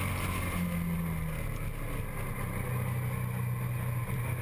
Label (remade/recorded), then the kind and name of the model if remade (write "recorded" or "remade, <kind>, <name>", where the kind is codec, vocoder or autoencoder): recorded